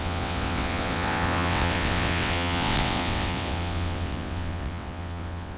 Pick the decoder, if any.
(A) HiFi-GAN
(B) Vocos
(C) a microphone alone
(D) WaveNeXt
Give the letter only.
D